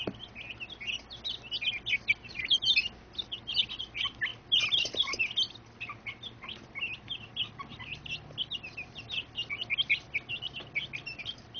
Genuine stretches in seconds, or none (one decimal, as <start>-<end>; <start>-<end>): 0.0-2.3; 2.9-11.6